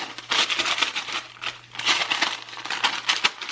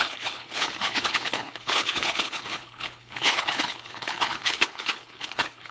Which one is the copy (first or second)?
second